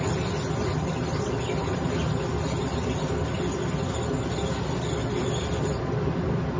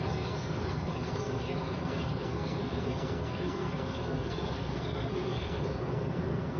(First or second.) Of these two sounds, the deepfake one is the second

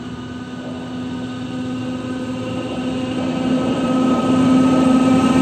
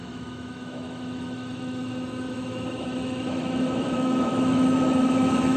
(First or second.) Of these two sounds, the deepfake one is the second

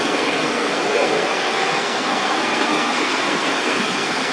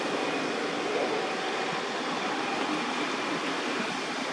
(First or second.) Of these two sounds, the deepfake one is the first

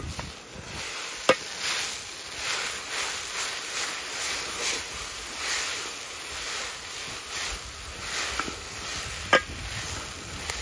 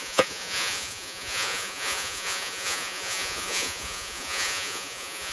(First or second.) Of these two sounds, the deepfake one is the second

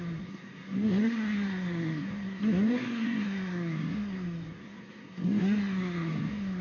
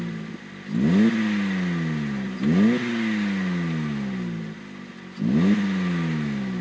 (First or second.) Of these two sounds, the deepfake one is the first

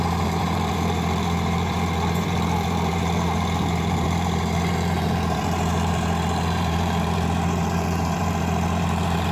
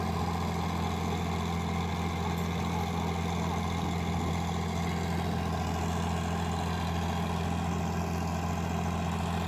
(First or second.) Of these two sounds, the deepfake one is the first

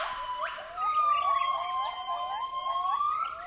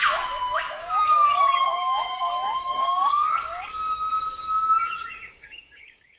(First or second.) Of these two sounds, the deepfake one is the second